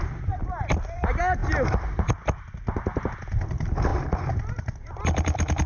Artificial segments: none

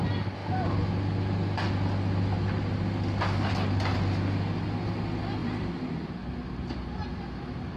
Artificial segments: 5.4-6.0 (vocoder, BigVGAN v2); 7.1-7.8

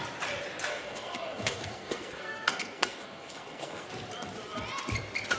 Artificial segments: 0.7-3.9 (codec, SNAC)

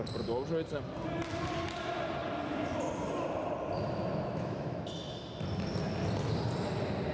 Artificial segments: 4.1-4.9 (autoencoder, DAC-VAE)

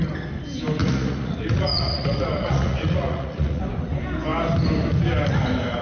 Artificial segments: 0.8-3.7 (vocoder, Vocos)

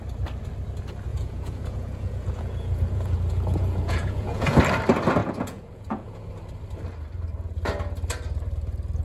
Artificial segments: 1.1-4.6 (vocoder, Vocos); 5.2-6.3

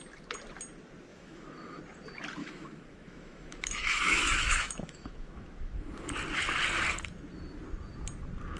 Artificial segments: 1.1-1.8 (autoencoder, DAC-VAE); 2.4-6.1